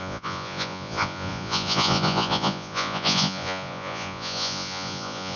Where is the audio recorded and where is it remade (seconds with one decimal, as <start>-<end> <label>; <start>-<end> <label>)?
0.0-5.4 remade